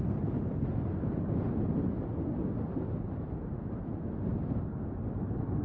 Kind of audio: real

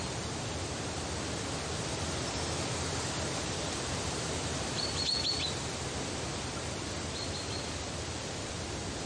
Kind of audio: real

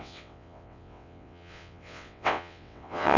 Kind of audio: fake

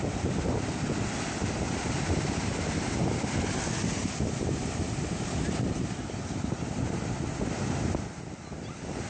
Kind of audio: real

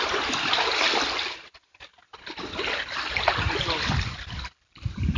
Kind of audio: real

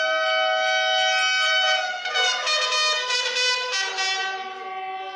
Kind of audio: real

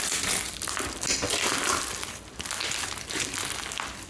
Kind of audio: real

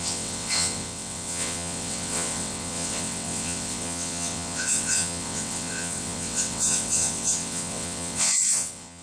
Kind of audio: fake